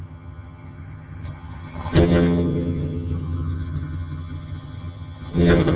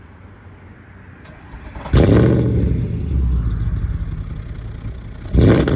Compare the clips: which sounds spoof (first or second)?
first